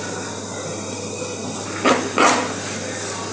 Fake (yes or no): yes